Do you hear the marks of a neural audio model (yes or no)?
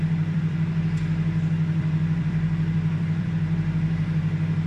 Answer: yes